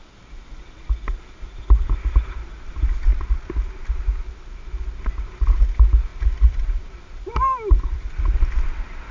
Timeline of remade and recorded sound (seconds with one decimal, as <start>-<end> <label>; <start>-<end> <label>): 0.0-6.1 recorded; 6.1-8.2 remade; 8.2-9.1 recorded